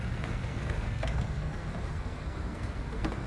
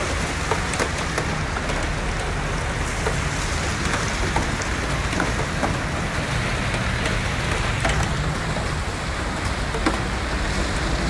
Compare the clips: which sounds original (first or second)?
second